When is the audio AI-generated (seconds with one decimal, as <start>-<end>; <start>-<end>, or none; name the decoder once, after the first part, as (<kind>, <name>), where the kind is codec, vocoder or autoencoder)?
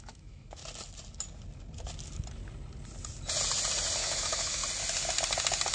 0.0-0.6 (autoencoder, DAC-VAE); 4.0-4.6